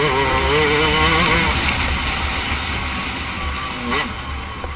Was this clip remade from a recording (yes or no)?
no